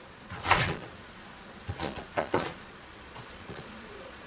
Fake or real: fake